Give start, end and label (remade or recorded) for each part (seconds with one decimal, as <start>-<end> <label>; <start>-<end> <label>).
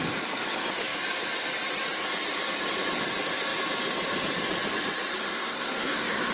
0.0-5.2 recorded; 5.2-6.3 remade